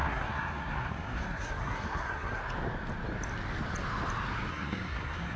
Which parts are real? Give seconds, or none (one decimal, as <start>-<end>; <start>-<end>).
2.4-4.5